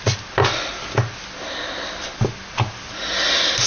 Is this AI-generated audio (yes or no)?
no